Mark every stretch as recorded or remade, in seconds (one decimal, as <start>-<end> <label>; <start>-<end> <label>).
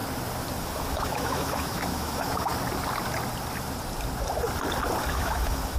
0.0-0.6 recorded; 0.6-2.5 remade; 2.5-5.1 recorded; 5.1-5.8 remade